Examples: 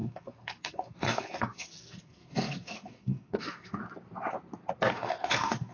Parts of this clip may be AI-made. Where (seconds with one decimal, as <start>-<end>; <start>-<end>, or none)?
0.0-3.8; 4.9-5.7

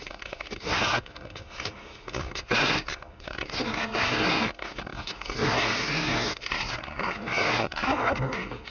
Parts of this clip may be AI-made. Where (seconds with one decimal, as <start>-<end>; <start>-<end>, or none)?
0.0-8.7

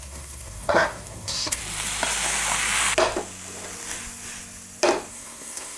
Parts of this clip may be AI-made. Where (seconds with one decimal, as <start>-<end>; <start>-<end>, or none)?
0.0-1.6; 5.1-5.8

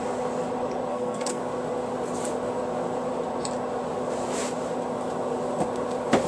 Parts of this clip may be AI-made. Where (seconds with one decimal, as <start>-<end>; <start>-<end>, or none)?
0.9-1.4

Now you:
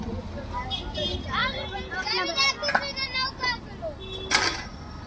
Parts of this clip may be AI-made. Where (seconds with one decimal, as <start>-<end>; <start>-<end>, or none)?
none